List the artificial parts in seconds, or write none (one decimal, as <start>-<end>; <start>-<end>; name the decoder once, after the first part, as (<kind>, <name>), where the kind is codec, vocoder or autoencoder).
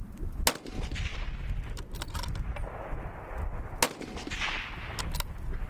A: none